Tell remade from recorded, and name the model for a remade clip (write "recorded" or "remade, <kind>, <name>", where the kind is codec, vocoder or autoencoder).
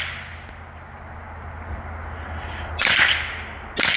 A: recorded